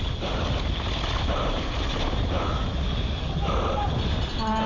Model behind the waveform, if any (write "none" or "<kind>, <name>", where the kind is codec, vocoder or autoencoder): none